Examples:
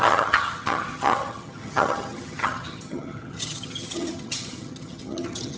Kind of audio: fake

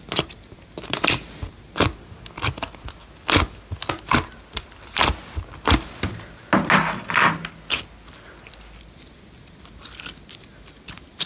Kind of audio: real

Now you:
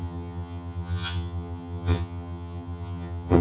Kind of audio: fake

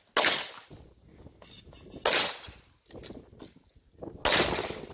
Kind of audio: real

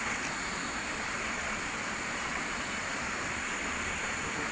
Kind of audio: real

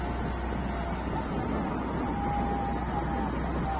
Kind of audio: real